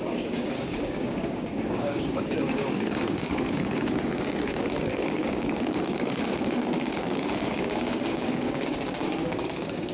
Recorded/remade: remade